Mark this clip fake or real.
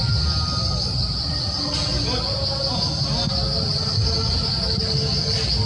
real